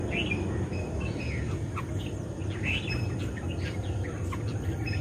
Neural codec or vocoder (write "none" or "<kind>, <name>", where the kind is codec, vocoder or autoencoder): none